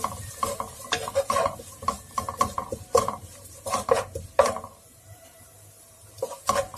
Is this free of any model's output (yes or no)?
no